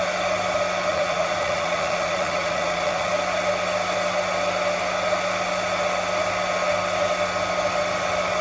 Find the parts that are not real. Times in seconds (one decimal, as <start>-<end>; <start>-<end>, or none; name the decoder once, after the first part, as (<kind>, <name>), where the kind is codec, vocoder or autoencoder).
0.9-3.1 (vocoder, Vocos)